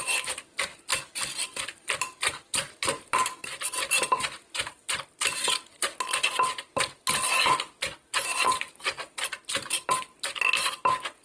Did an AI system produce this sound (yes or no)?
no